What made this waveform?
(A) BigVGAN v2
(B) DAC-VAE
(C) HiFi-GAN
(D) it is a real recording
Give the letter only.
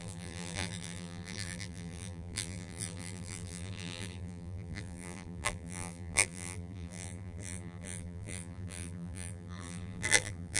A